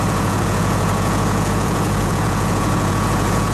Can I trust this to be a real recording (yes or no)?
no